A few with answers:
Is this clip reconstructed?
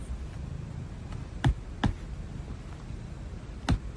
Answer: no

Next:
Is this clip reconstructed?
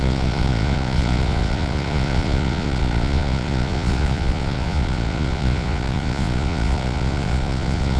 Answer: yes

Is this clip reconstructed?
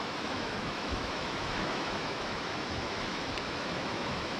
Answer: yes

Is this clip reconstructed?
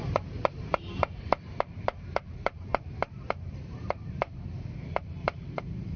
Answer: yes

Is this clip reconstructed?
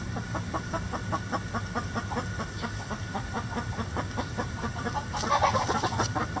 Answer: no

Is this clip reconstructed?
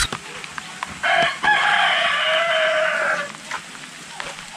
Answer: no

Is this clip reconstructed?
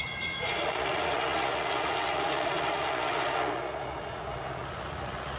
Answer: yes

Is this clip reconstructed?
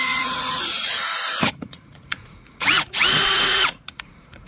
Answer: yes